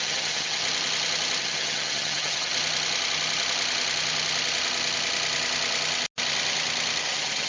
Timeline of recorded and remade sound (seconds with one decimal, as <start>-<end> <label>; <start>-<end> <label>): 0.0-0.6 remade; 0.6-1.4 recorded; 1.4-2.5 remade; 2.5-7.0 recorded; 7.0-7.5 remade